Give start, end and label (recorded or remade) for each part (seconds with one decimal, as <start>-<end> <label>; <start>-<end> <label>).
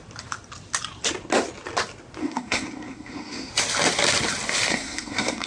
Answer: 0.0-2.2 recorded; 2.2-3.5 remade; 3.5-4.7 recorded; 4.7-5.5 remade